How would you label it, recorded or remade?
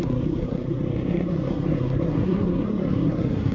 remade